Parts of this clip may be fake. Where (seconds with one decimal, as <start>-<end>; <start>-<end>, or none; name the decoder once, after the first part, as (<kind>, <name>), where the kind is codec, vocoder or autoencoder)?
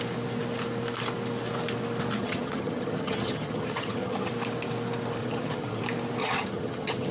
2.2-4.3 (vocoder, HiFi-GAN); 5.2-5.8; 6.2-7.1